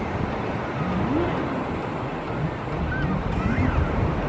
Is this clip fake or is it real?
real